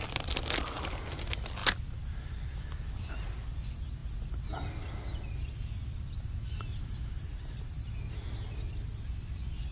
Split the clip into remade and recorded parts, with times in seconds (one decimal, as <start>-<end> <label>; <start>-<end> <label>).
0.0-9.7 recorded